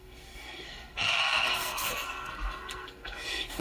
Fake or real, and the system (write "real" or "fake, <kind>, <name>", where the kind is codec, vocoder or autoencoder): fake, codec, SNAC